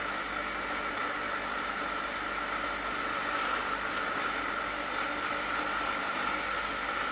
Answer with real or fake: real